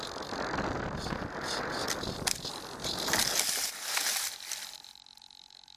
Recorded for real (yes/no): yes